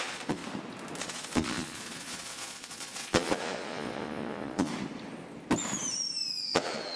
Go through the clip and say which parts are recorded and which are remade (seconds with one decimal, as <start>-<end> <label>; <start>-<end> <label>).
0.0-0.4 remade; 0.4-1.0 recorded; 1.0-4.7 remade; 4.7-6.4 recorded; 6.4-7.0 remade